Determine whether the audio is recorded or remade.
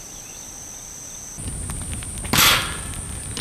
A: recorded